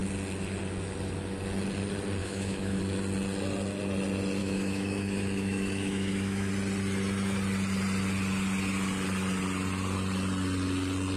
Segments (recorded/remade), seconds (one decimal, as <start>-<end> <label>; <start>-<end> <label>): 0.0-2.2 recorded; 2.2-2.8 remade; 2.8-4.4 recorded; 4.4-6.5 remade; 6.5-11.2 recorded